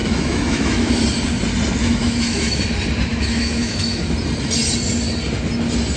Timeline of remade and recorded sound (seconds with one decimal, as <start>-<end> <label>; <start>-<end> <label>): 0.0-1.0 remade; 1.0-1.8 recorded; 1.8-2.6 remade; 2.6-3.1 recorded; 3.1-4.0 remade; 4.0-6.0 recorded